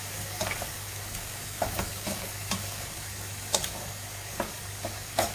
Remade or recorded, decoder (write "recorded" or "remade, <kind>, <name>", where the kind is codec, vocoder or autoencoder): remade, codec, DAC